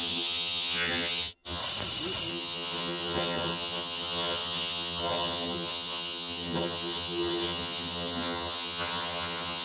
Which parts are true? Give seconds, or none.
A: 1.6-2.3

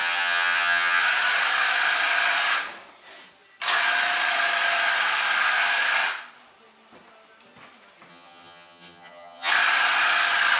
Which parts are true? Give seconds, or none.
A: 1.0-8.1; 9.5-10.6

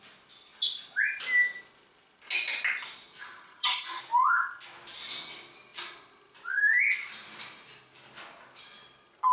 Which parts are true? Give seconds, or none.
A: 0.0-3.2; 4.0-9.3